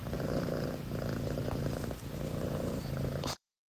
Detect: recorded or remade remade